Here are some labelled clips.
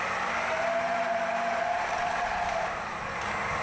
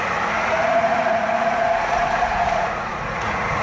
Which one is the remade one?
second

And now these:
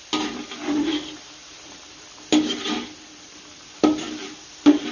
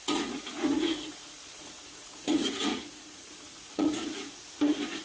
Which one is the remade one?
second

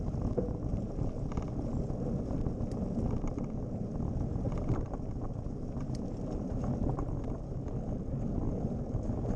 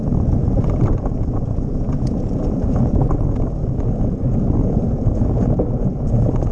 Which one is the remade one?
second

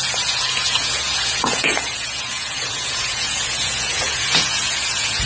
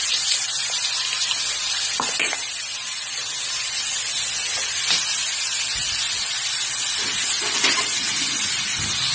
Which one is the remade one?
first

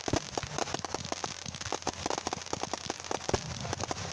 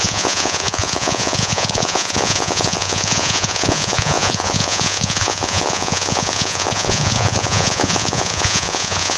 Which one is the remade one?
second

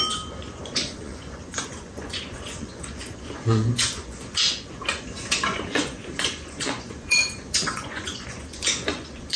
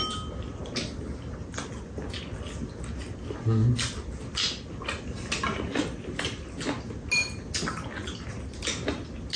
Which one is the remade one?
first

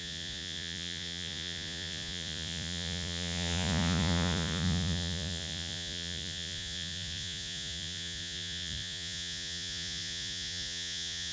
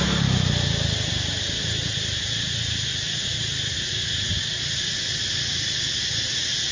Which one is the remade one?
first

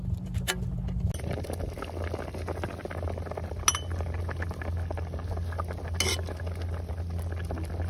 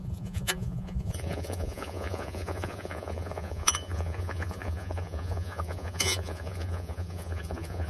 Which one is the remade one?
second